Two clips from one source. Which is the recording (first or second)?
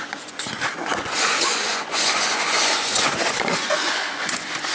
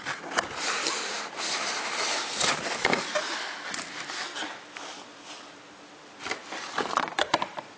second